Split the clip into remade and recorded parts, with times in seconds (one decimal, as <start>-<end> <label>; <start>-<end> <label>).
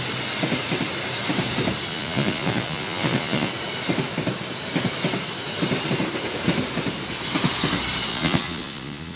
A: 0.0-1.9 recorded; 1.9-3.5 remade; 3.5-8.1 recorded; 8.1-9.2 remade